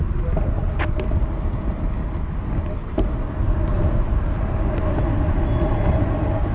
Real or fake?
real